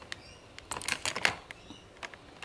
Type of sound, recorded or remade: recorded